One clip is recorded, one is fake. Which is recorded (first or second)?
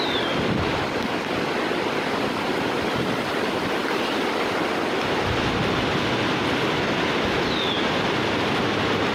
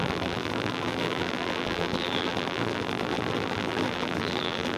first